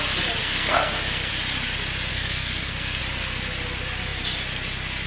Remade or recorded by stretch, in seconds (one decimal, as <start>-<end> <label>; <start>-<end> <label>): 0.0-0.4 recorded; 0.4-1.3 remade; 1.3-2.1 recorded; 2.1-3.0 remade; 3.0-5.1 recorded